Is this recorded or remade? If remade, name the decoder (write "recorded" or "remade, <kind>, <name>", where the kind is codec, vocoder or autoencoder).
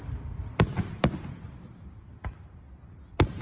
recorded